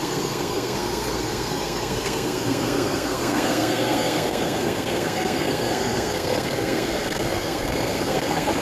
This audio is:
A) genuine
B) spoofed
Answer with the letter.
B